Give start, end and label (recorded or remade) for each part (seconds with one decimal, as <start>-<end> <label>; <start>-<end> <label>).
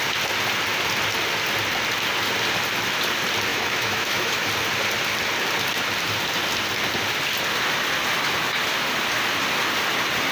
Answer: 0.0-3.5 recorded; 3.5-4.5 remade; 4.5-10.3 recorded